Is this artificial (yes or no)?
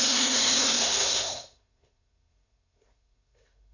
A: yes